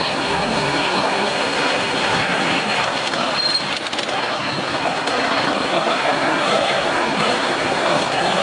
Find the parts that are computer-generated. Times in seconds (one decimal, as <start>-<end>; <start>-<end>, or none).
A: 0.0-3.3; 4.1-8.4